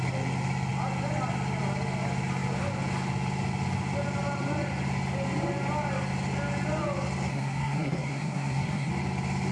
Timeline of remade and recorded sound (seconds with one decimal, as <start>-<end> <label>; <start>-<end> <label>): 0.0-7.3 recorded; 7.3-8.9 remade; 8.9-9.5 recorded